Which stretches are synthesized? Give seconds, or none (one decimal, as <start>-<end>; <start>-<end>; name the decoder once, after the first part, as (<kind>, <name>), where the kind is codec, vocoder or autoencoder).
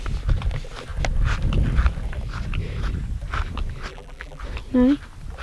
3.9-4.4 (vocoder, BigVGAN v2)